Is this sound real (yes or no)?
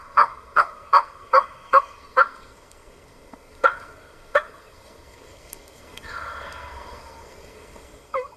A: no